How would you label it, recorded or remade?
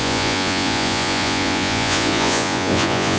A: remade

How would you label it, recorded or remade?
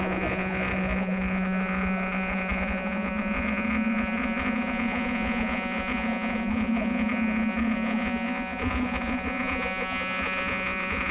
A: remade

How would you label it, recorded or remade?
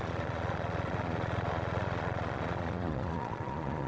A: remade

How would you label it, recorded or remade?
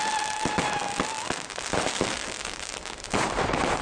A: recorded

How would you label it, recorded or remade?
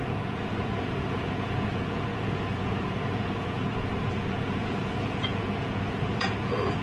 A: remade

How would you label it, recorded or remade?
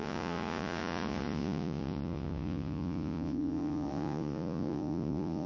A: remade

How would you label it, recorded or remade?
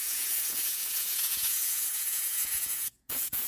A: remade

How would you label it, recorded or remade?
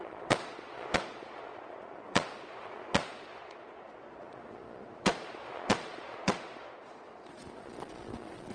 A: remade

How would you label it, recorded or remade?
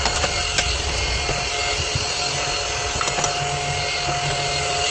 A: recorded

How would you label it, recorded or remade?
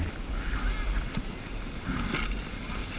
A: recorded